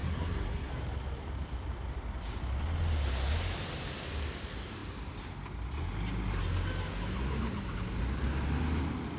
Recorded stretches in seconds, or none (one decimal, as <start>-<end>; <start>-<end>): 0.7-9.2